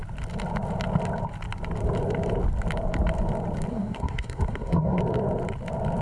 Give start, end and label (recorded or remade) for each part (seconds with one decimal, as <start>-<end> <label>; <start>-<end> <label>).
0.0-3.7 recorded; 3.7-5.0 remade; 5.0-6.0 recorded